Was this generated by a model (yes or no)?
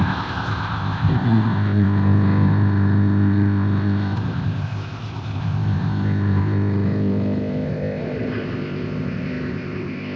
yes